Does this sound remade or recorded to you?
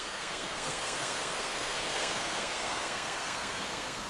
remade